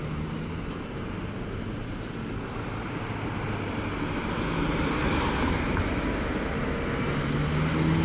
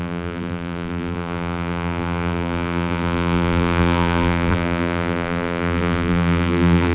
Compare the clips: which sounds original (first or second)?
first